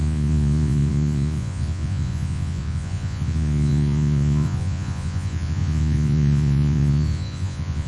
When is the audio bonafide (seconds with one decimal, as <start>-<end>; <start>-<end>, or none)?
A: none